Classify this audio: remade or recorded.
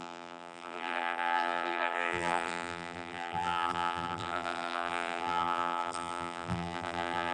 remade